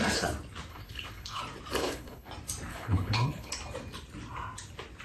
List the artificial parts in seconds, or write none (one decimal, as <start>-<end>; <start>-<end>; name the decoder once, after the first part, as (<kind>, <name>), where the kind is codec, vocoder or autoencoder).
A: 0.7-1.4 (codec, HILCodec); 1.8-2.3; 2.7-3.5